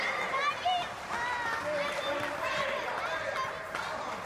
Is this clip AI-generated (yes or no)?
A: no